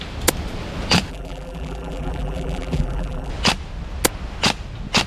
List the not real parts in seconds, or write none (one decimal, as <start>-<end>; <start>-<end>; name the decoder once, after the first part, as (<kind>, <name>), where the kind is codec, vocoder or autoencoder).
1.1-3.3 (vocoder, BigVGAN v2)